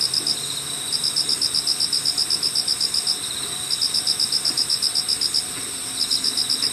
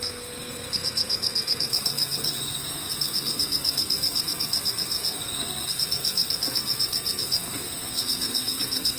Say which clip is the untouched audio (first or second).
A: first